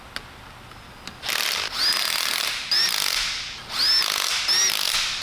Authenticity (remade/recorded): recorded